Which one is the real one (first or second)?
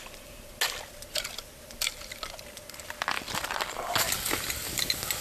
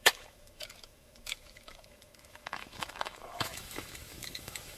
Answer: first